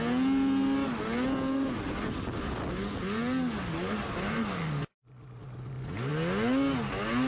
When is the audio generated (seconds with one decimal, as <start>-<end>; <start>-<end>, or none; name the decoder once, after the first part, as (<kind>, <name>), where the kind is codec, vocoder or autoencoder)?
3.8-4.6 (vocoder, BigVGAN v2)